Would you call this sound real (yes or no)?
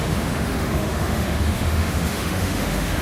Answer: no